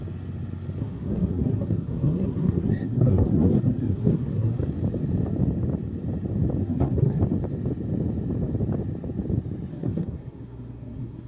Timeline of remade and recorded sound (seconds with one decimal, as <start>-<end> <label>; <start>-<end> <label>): 0.0-0.8 recorded; 0.8-4.6 remade; 4.6-6.6 recorded; 6.6-7.2 remade; 7.2-9.7 recorded; 9.7-11.3 remade